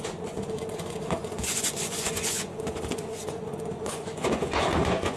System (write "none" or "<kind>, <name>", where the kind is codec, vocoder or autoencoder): vocoder, Vocos